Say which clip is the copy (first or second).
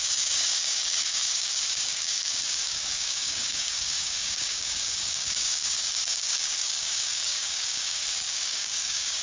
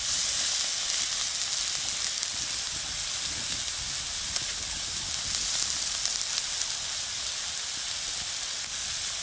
first